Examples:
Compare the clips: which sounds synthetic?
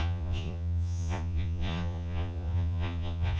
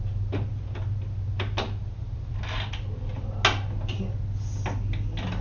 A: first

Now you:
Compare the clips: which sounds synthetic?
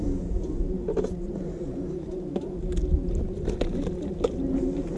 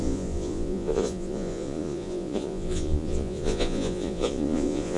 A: second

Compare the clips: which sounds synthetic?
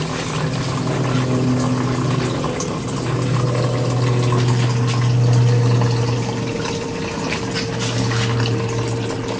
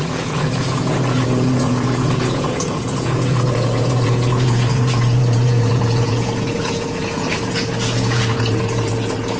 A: second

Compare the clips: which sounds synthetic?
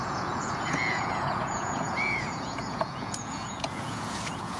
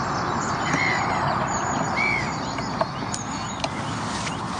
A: first